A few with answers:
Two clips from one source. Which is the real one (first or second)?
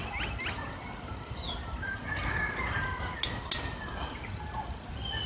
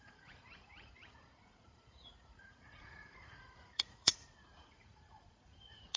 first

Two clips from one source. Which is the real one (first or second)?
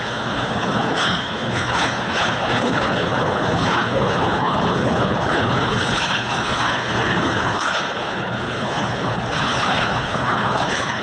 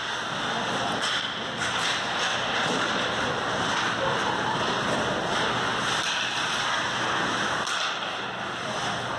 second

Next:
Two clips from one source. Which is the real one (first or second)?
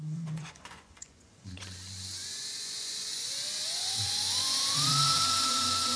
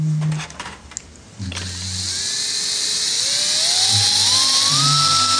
second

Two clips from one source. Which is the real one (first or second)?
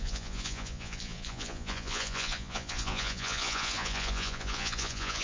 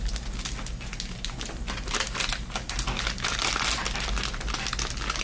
second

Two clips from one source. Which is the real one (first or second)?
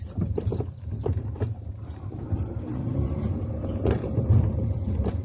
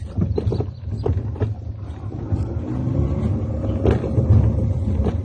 second